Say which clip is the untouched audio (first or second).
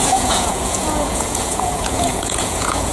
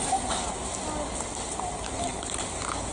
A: second